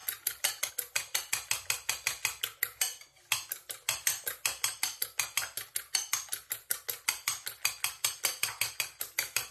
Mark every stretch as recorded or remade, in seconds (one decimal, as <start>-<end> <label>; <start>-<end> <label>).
0.0-9.5 recorded